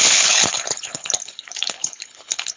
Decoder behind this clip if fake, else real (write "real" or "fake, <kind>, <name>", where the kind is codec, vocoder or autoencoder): fake, codec, HILCodec